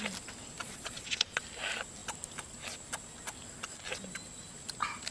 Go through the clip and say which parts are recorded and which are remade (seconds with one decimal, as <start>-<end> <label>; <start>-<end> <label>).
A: 0.0-0.6 recorded; 0.6-1.4 remade; 1.4-5.1 recorded